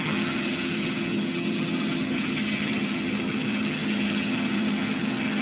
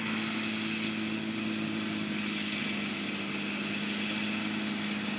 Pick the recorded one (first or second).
second